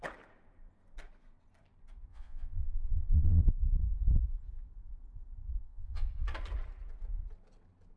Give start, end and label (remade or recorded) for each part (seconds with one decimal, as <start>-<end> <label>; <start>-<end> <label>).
0.0-2.1 recorded; 2.1-3.4 remade; 3.4-5.6 recorded; 5.6-6.1 remade; 6.1-8.0 recorded